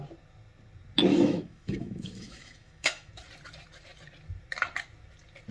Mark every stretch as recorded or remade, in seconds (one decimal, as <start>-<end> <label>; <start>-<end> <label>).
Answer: 0.0-1.1 recorded; 1.1-3.1 remade; 3.1-5.5 recorded

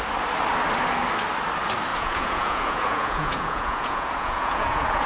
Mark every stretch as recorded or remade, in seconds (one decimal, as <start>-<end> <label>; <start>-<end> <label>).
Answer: 0.0-1.9 recorded; 1.9-5.1 remade

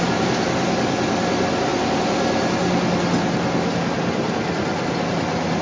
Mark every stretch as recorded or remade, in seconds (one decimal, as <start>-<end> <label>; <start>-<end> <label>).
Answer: 0.0-5.6 recorded

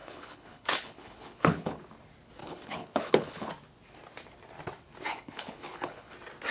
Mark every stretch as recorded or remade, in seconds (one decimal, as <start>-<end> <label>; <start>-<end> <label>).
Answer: 0.0-1.8 remade; 1.8-2.4 recorded; 2.4-3.5 remade; 3.5-5.1 recorded; 5.1-6.1 remade; 6.1-6.5 recorded

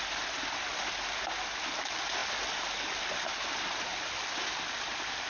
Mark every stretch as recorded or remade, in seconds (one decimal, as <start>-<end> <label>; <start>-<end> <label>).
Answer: 0.0-5.3 recorded

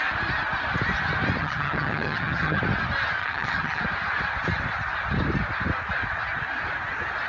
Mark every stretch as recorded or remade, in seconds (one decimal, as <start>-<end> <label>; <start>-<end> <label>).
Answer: 0.0-1.4 recorded; 1.4-2.6 remade; 2.6-3.2 recorded; 3.2-3.8 remade; 3.8-7.3 recorded

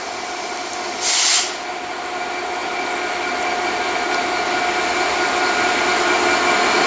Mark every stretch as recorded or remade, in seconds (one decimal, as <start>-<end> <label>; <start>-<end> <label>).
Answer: 0.0-6.9 recorded